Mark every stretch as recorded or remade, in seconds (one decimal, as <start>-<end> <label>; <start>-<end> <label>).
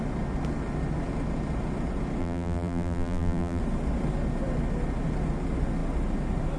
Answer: 0.0-2.2 recorded; 2.2-3.6 remade; 3.6-6.6 recorded